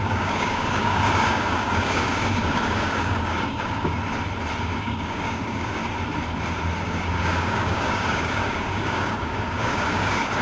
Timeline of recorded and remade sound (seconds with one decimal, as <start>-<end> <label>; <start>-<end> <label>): 0.0-4.0 remade; 4.0-4.6 recorded; 4.6-5.8 remade; 5.8-6.8 recorded; 6.8-10.4 remade